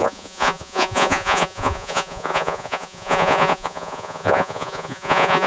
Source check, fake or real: fake